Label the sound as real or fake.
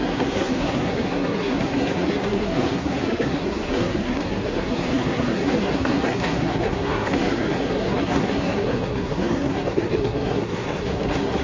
fake